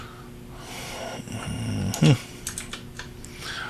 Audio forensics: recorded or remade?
recorded